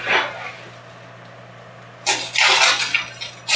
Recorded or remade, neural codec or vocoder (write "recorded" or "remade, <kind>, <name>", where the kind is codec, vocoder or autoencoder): recorded